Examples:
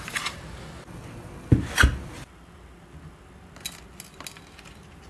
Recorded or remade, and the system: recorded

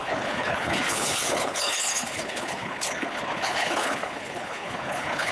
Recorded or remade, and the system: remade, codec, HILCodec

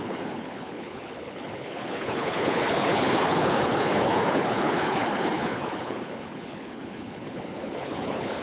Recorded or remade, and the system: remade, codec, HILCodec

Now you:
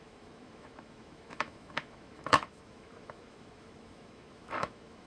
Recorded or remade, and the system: remade, autoencoder, DAC-VAE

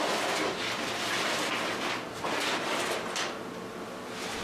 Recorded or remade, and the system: recorded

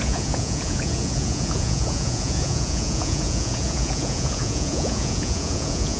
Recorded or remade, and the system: remade, vocoder, Vocos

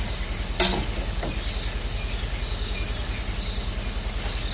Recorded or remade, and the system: recorded